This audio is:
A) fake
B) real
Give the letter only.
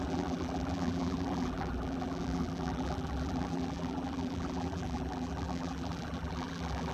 A